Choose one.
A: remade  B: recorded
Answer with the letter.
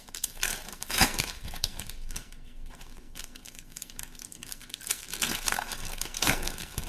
A